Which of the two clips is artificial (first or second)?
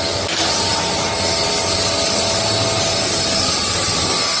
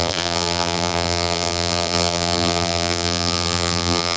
second